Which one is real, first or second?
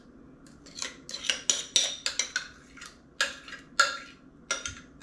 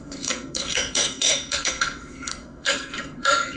first